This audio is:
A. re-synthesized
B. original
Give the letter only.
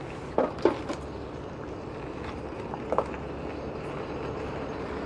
B